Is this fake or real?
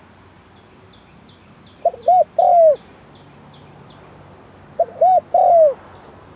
real